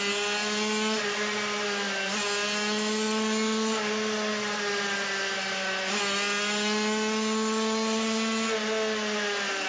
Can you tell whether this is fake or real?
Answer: real